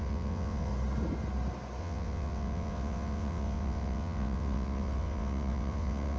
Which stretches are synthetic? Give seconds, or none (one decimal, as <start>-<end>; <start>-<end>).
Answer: 0.0-0.7; 1.8-6.2